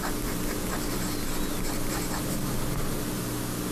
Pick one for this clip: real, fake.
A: real